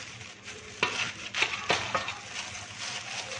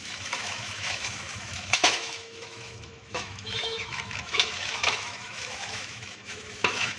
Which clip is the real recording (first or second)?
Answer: first